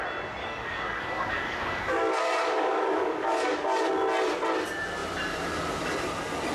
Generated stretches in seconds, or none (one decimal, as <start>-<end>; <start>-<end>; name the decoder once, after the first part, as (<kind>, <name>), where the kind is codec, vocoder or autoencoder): 0.4-3.9 (codec, DAC)